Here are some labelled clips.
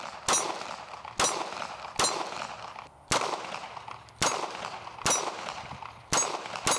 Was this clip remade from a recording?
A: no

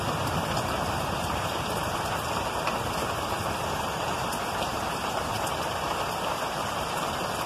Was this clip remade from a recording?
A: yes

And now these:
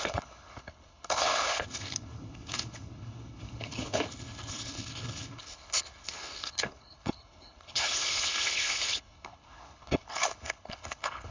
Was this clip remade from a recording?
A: yes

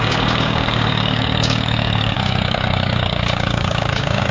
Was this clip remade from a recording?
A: yes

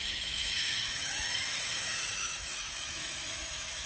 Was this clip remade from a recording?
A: yes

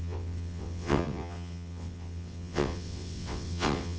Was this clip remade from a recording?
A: yes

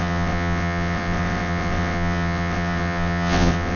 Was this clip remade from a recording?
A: yes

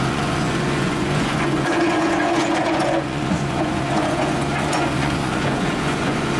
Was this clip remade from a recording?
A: yes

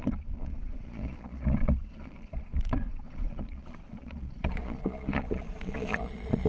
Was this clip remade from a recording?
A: yes